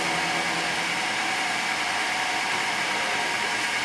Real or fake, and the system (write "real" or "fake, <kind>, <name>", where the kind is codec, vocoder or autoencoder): real